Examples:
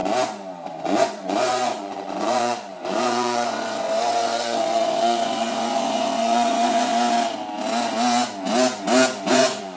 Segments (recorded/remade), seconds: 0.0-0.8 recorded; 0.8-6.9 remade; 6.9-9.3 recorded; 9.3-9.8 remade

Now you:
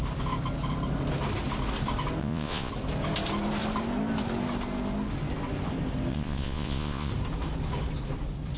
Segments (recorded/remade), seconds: 0.0-2.2 recorded; 2.2-2.7 remade; 2.7-6.1 recorded; 6.1-7.1 remade; 7.1-8.6 recorded

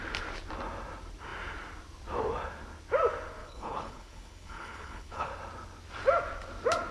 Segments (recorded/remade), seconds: 0.0-3.4 recorded; 3.4-5.3 remade; 5.3-6.9 recorded

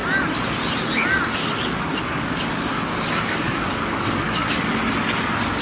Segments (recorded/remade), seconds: 0.0-1.4 recorded; 1.4-4.8 remade; 4.8-5.6 recorded

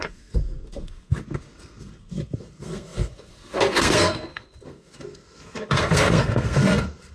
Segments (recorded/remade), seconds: 0.0-7.1 remade